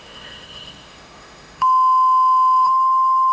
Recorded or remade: remade